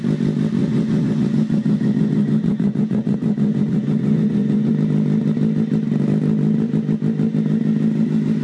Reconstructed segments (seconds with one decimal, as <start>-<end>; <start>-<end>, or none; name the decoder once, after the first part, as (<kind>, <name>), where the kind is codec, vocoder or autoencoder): 0.6-4.7 (vocoder, Vocos)